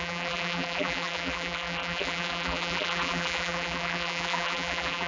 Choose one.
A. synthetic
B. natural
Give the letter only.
A